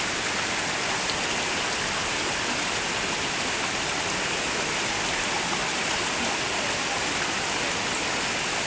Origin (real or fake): real